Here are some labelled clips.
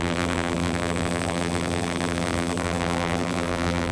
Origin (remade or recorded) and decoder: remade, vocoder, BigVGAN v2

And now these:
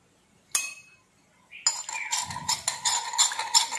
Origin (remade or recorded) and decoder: recorded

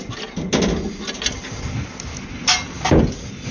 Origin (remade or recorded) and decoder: recorded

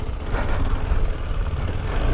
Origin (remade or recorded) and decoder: recorded